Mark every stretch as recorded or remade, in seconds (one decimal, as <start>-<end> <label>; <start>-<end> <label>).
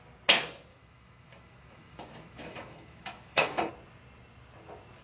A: 0.0-0.7 recorded; 0.7-3.7 remade; 3.7-5.0 recorded